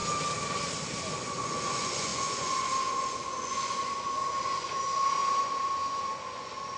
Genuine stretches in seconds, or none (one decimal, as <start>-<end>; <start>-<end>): 0.0-1.0